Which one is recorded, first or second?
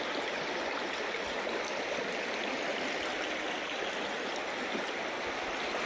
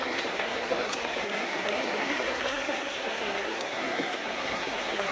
first